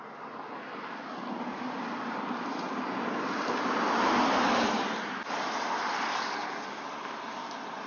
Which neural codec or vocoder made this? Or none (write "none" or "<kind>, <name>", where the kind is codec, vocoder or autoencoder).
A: none